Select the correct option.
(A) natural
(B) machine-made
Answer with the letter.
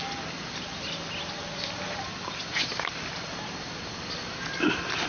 A